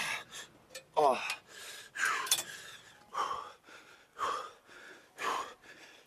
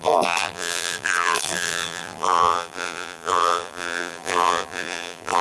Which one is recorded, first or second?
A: first